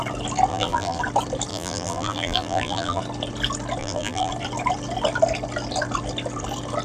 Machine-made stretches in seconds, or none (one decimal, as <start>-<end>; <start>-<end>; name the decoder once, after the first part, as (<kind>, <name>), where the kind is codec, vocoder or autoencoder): 0.5-1.0 (vocoder, BigVGAN v2); 1.5-3.0; 3.8-4.3